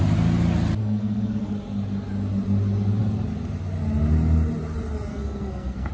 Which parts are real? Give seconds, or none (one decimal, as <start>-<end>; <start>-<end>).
0.0-0.8; 1.5-5.1